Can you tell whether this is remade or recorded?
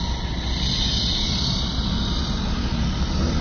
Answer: recorded